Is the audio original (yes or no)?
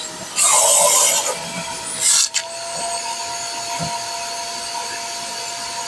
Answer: yes